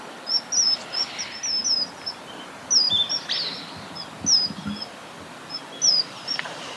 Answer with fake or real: real